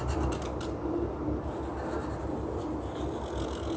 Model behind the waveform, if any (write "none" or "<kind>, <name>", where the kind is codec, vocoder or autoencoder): none